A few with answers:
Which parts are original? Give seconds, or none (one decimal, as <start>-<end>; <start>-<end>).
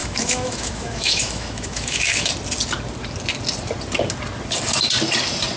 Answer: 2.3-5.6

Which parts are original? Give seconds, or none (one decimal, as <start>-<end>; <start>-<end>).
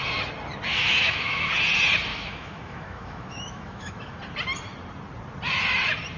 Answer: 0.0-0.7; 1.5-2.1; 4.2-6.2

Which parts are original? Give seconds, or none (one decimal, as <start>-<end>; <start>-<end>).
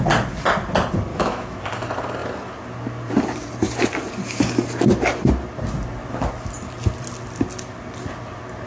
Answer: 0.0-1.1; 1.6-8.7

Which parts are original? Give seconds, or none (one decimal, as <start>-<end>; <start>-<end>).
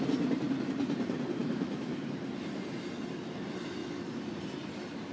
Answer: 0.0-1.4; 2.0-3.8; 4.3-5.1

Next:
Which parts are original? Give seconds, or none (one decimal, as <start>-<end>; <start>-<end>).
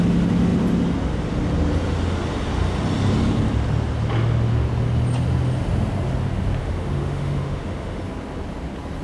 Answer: 0.0-6.6; 8.0-9.0